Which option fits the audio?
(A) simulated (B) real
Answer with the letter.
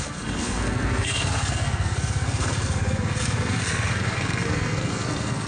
A